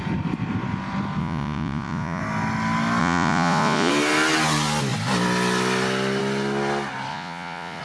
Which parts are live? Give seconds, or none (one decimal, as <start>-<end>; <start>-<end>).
0.0-1.2; 2.2-3.0; 3.9-7.1